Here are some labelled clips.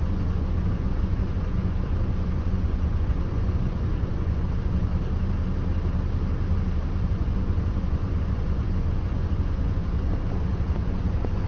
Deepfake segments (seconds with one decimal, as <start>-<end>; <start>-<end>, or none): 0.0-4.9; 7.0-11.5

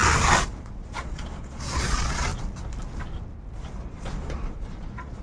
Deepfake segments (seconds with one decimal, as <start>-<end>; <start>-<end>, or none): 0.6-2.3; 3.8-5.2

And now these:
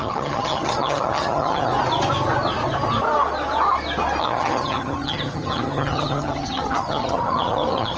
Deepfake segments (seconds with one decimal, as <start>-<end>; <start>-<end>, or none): 0.0-1.7; 4.2-8.0